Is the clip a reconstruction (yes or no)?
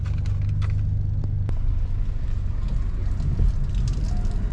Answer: no